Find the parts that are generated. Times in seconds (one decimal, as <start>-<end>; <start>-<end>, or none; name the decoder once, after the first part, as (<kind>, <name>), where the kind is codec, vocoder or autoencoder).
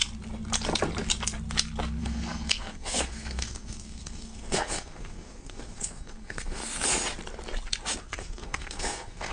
2.0-6.6 (codec, SNAC); 8.0-9.3